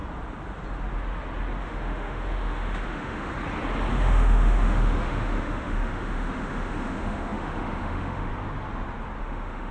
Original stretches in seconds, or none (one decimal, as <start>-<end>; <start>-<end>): 0.0-1.6; 3.3-3.9; 8.3-9.2